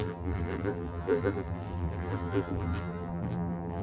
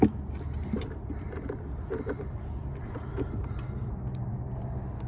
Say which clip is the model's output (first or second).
first